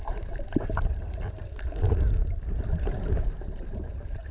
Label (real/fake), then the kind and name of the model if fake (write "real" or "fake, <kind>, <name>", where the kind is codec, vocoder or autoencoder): fake, vocoder, BigVGAN v2